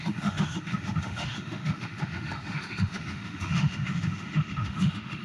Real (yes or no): no